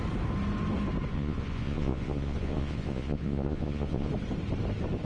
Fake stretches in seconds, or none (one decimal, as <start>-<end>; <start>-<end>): 1.1-4.1